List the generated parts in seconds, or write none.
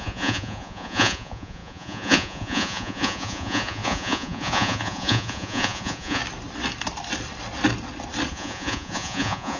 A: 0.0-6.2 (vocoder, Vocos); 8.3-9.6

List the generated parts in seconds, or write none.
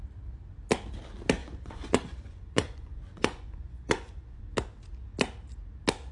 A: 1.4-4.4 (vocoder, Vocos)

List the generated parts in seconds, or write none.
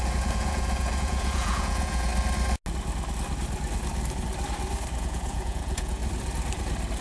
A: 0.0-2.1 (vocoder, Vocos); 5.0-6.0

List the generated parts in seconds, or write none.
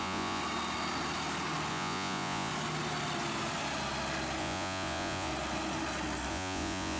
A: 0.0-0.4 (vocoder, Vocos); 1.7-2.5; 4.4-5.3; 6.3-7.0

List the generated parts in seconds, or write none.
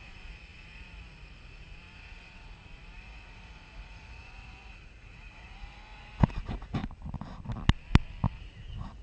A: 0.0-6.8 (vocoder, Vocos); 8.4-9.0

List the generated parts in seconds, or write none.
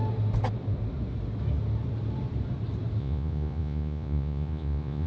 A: 3.0-5.1 (vocoder, Vocos)